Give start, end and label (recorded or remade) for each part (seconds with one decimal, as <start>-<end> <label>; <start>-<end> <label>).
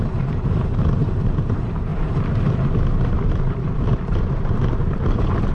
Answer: 0.0-5.5 remade